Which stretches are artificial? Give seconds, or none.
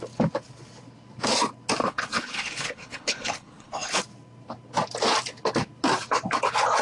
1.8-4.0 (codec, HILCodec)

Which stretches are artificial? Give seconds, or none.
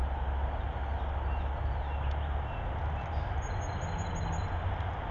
none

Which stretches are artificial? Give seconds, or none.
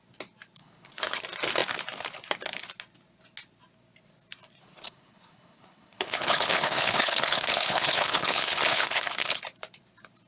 0.6-1.2 (codec, HILCodec); 4.6-9.4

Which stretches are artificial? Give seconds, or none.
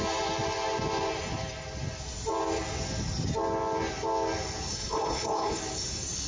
4.7-5.6 (codec, HILCodec)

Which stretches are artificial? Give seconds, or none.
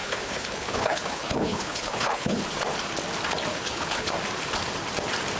0.0-2.4 (codec, HILCodec); 3.5-4.1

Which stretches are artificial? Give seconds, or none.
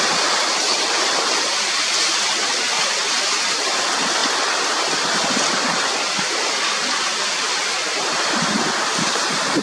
none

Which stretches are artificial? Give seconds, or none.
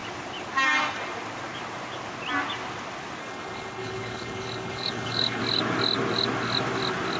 3.2-5.4 (codec, HILCodec)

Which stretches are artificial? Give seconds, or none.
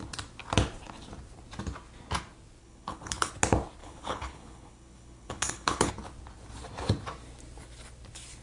2.6-3.3 (codec, HILCodec); 3.8-5.9